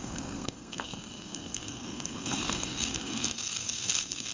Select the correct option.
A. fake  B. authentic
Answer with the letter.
A